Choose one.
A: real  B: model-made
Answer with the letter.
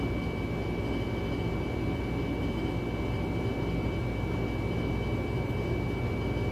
A